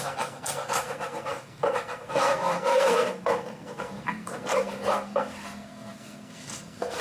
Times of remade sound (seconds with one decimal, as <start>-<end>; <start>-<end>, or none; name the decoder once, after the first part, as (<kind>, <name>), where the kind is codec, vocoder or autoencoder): 0.0-7.0 (codec, SNAC)